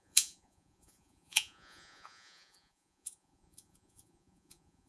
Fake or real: fake